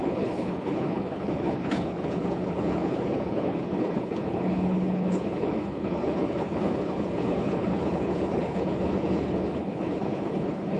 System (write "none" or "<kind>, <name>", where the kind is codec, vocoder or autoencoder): codec, HILCodec